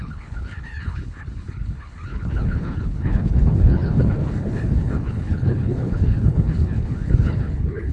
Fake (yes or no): yes